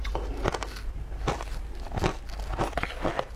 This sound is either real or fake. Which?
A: real